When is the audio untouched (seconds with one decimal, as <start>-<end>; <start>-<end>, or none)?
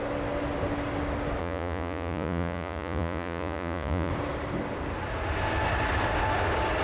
0.0-1.4; 4.1-6.8